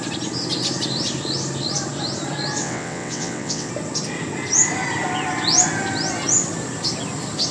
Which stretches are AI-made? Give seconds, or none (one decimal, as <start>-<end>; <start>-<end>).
2.6-3.7